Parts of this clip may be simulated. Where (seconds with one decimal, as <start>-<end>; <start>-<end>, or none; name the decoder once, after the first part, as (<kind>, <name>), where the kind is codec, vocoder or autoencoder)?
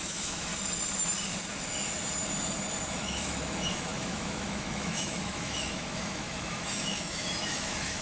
0.0-0.5 (autoencoder, DAC-VAE); 2.9-8.0